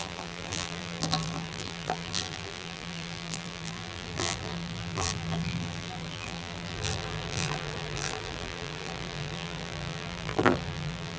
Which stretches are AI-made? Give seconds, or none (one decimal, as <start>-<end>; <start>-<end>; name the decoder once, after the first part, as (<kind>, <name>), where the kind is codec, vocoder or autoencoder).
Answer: 0.0-11.2 (vocoder, BigVGAN v2)